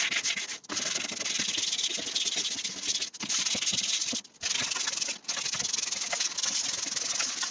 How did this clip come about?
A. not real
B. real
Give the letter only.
B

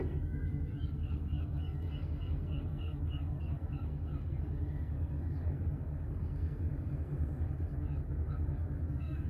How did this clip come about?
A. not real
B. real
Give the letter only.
A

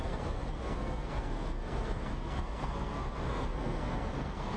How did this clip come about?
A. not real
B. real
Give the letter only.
A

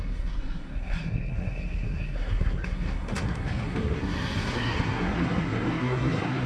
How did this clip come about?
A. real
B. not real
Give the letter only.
B